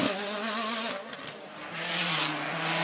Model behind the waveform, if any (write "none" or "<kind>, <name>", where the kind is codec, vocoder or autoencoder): none